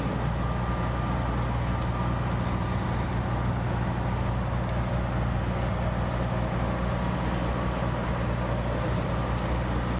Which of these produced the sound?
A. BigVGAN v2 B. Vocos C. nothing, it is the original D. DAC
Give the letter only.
C